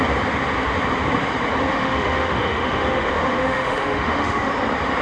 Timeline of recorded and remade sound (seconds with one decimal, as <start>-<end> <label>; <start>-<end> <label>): 0.0-1.7 recorded; 1.7-4.5 remade; 4.5-5.0 recorded